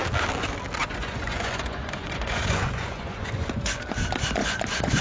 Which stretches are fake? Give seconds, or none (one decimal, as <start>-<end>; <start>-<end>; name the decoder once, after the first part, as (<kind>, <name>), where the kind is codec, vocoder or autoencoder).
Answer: 0.8-3.8 (vocoder, Vocos); 4.4-5.0